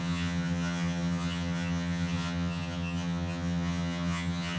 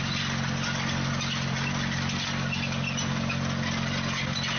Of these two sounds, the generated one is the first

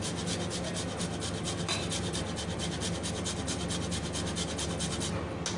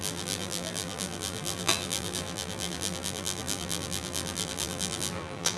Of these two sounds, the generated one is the second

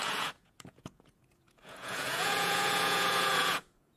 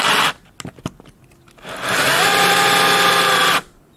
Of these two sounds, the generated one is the first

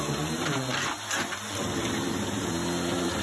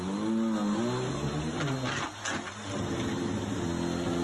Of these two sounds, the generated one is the first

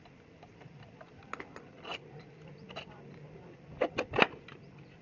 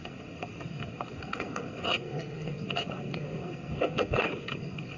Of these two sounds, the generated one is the second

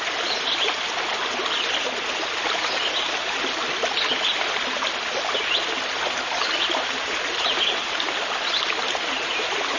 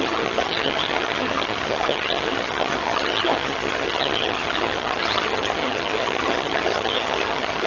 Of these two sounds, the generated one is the second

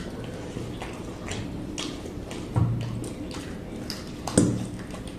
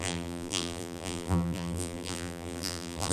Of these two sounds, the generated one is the second